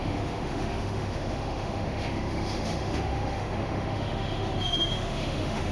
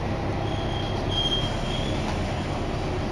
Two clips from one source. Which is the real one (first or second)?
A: second